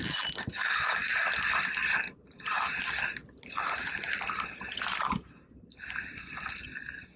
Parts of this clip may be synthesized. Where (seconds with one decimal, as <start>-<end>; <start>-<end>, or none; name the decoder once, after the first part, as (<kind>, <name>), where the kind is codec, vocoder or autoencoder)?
1.0-2.6 (vocoder, BigVGAN v2); 3.2-5.0